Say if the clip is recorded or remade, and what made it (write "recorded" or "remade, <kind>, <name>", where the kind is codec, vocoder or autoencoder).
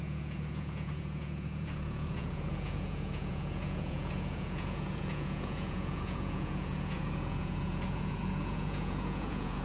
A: remade, vocoder, Vocos